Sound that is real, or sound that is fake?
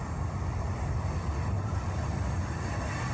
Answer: real